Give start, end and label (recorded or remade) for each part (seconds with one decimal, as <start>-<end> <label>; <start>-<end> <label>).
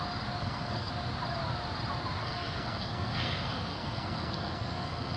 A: 0.0-0.4 recorded; 0.4-0.9 remade; 0.9-2.2 recorded; 2.2-5.2 remade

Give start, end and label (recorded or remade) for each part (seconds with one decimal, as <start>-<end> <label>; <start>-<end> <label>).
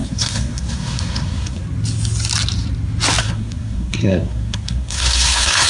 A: 0.0-1.6 remade; 1.6-3.2 recorded; 3.2-5.7 remade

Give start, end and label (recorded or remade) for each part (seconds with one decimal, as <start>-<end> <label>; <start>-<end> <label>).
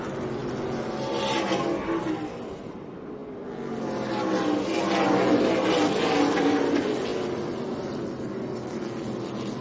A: 0.0-9.6 recorded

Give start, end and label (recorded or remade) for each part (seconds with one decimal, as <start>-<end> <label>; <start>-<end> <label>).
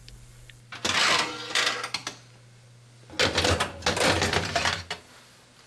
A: 0.0-5.7 recorded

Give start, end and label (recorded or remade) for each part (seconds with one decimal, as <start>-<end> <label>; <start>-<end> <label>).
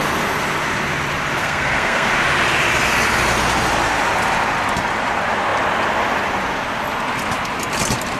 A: 0.0-1.4 recorded; 1.4-2.1 remade; 2.1-8.2 recorded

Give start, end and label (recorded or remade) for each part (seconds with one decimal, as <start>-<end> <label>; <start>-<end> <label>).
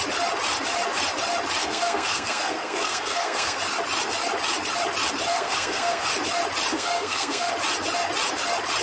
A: 0.0-1.6 recorded; 1.6-3.6 remade; 3.6-5.3 recorded; 5.3-6.1 remade; 6.1-6.7 recorded; 6.7-7.5 remade; 7.5-8.8 recorded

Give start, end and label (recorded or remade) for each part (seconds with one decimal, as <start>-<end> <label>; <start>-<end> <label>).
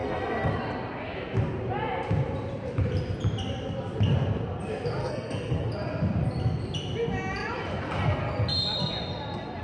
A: 0.0-0.5 remade; 0.5-5.0 recorded; 5.0-5.7 remade; 5.7-9.6 recorded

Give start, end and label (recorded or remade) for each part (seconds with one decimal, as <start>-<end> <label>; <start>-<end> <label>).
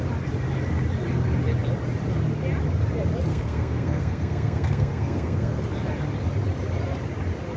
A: 0.0-3.3 recorded; 3.3-5.6 remade; 5.6-7.6 recorded